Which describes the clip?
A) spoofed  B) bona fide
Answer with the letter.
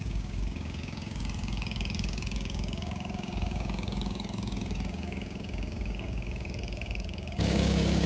A